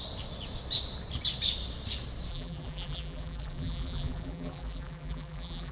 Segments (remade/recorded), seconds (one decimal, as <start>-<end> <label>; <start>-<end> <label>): 0.0-2.3 recorded; 2.3-5.7 remade